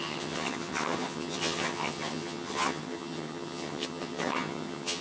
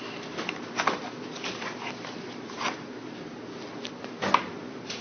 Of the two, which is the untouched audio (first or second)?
second